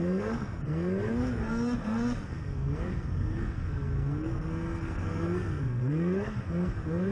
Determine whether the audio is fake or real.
fake